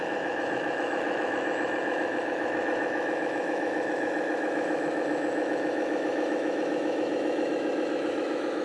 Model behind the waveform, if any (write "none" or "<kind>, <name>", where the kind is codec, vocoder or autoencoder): autoencoder, DAC-VAE